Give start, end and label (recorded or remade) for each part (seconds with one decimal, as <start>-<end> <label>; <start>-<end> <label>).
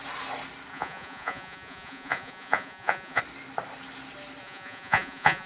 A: 0.0-0.7 recorded; 0.7-3.2 remade; 3.2-4.4 recorded; 4.4-5.5 remade